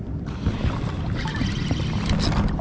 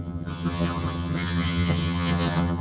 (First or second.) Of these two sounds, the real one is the first